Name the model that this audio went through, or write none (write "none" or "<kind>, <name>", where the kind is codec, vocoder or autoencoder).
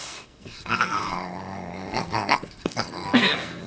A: codec, SNAC